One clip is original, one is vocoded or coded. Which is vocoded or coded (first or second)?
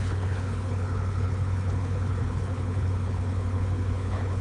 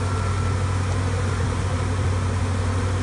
first